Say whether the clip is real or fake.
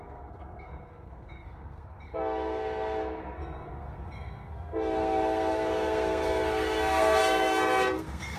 fake